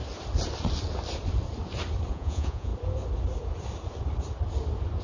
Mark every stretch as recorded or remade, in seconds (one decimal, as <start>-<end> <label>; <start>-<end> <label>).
0.0-2.1 recorded; 2.1-2.7 remade; 2.7-5.0 recorded